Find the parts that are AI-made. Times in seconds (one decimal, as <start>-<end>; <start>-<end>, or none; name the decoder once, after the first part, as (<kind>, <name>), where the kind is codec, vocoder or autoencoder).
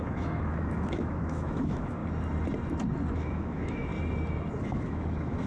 0.0-2.0 (autoencoder, DAC-VAE); 3.1-3.9; 4.6-5.5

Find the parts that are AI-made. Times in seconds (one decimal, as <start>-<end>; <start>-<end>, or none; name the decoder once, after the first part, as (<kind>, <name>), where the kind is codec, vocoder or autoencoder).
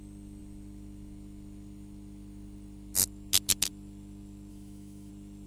4.5-5.1 (autoencoder, DAC-VAE)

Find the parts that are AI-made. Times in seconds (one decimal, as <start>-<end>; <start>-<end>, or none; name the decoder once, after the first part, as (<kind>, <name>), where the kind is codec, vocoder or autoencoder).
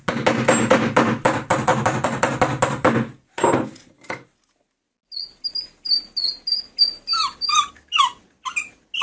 none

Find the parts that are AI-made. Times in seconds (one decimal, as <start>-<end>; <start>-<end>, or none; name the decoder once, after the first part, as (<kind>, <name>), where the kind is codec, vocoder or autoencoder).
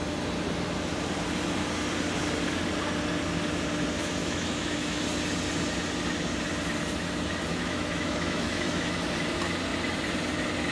4.2-5.0 (autoencoder, DAC-VAE); 7.5-8.9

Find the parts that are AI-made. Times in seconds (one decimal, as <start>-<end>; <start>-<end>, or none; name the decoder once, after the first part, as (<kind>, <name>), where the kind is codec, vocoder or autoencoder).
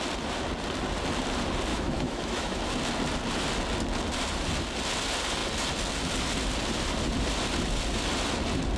1.7-2.6 (autoencoder, DAC-VAE)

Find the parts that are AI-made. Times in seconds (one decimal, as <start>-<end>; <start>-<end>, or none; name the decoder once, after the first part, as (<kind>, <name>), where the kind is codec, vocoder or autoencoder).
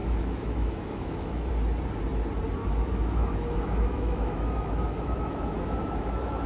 0.0-1.5 (autoencoder, DAC-VAE); 2.6-6.5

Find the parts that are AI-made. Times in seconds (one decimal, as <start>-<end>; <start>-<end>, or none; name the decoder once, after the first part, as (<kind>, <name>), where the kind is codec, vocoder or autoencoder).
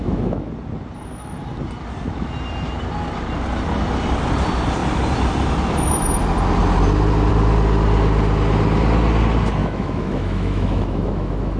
0.0-0.5 (autoencoder, DAC-VAE); 9.6-11.6